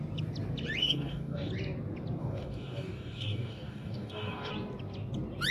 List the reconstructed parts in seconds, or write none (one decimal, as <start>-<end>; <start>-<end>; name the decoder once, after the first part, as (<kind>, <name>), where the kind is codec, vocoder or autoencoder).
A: 0.8-1.5 (codec, DAC); 2.2-4.5